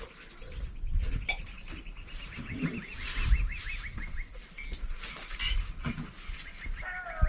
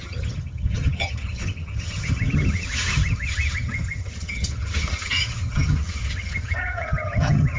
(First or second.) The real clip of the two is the first